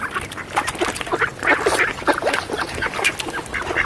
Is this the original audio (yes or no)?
yes